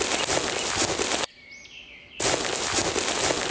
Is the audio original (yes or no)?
yes